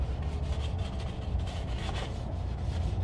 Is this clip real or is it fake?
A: real